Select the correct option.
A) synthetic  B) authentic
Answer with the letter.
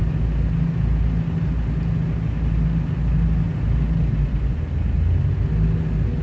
B